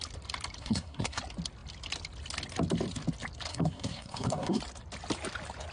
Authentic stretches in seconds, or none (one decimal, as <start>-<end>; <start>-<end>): 0.0-0.6; 1.2-3.5; 4.6-5.7